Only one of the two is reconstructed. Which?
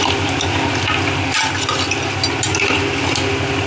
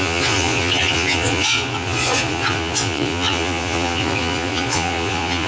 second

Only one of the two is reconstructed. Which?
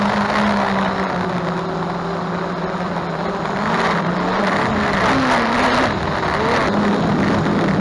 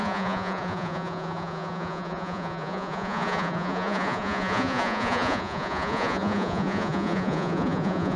second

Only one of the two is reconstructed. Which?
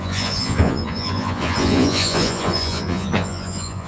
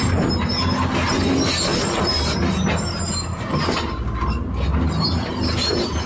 first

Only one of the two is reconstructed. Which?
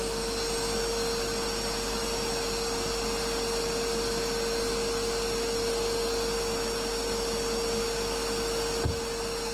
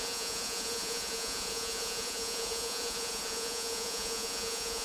second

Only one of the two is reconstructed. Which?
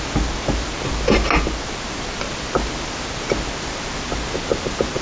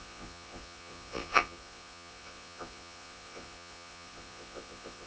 second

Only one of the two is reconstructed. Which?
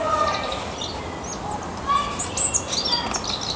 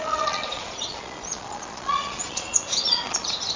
second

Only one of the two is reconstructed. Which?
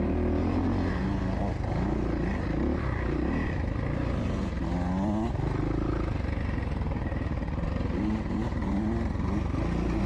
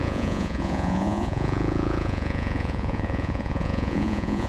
second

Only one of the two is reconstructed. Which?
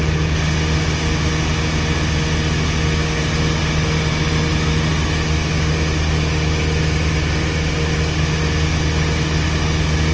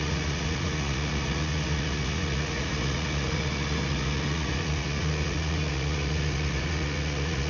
second